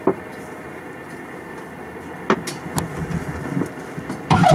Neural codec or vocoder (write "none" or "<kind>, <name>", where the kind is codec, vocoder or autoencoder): none